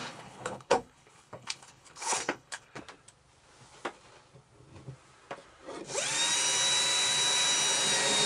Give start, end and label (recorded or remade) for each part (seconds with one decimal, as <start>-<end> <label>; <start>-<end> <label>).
0.0-2.8 remade; 2.8-8.3 recorded